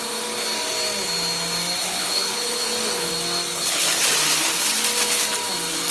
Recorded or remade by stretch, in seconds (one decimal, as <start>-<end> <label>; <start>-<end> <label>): 0.0-1.8 recorded; 1.8-3.1 remade; 3.1-3.5 recorded; 3.5-4.0 remade; 4.0-5.9 recorded